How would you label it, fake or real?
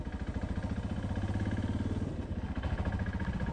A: real